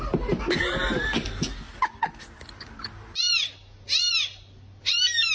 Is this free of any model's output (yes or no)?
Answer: yes